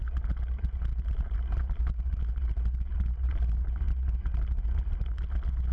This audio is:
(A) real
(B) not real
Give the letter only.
A